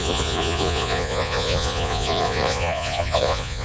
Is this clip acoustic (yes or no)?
no